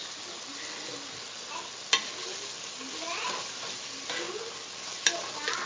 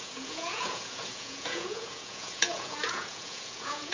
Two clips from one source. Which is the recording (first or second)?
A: first